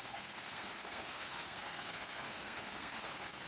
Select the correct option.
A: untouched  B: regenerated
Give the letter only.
B